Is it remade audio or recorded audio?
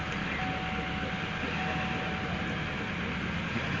recorded